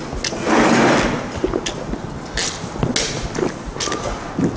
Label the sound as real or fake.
real